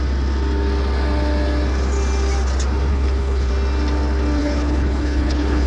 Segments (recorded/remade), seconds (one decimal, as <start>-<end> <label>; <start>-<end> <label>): 0.0-2.9 recorded; 2.9-3.5 remade; 3.5-4.4 recorded; 4.4-5.7 remade